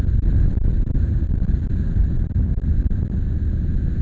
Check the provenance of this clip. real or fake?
real